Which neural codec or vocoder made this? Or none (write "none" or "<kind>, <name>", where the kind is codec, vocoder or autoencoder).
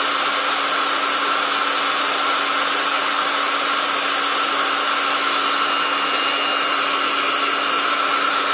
none